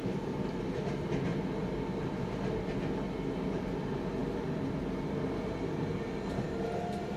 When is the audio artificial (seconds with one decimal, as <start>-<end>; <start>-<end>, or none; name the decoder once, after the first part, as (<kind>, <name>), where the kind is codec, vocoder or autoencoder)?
none